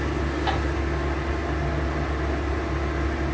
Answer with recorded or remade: recorded